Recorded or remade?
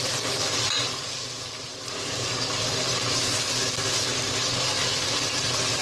recorded